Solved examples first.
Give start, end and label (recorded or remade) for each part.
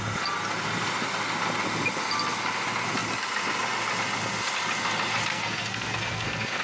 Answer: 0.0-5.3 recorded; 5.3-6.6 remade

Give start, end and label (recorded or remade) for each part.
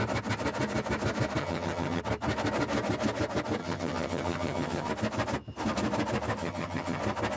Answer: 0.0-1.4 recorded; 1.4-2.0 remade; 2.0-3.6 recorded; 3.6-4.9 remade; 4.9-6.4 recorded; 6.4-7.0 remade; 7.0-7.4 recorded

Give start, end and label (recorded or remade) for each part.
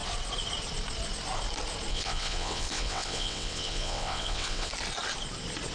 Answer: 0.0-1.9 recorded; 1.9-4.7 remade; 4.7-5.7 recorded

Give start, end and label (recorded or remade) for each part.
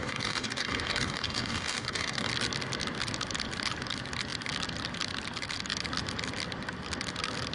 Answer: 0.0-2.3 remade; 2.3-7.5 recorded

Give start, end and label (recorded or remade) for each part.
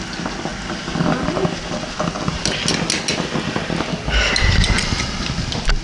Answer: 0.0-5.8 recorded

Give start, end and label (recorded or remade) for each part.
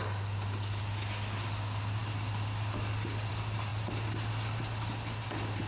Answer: 0.0-5.7 recorded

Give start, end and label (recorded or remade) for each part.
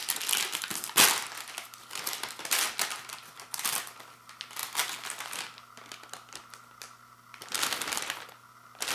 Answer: 0.0-8.9 recorded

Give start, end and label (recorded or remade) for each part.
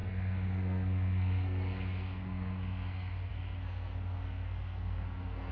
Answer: 0.0-5.5 remade